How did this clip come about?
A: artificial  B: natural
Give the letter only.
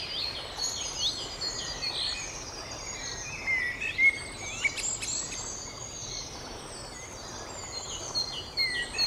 B